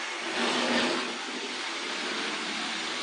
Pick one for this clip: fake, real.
real